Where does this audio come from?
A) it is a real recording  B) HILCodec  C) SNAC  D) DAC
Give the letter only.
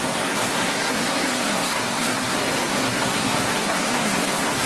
C